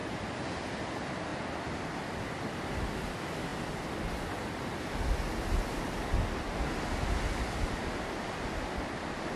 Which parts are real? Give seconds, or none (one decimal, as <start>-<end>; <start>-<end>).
0.6-9.4